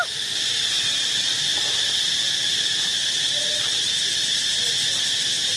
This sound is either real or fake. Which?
real